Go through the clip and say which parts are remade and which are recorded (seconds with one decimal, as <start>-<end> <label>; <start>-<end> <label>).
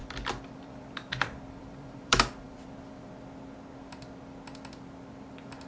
0.0-3.1 remade; 3.1-5.7 recorded